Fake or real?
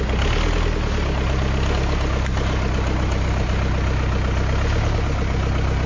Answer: real